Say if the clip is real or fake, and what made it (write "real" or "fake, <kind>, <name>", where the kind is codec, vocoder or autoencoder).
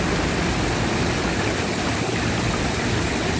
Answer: real